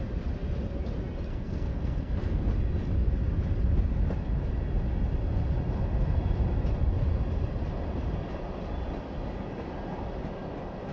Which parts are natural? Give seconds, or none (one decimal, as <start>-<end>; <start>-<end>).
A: 0.0-1.3; 2.5-10.9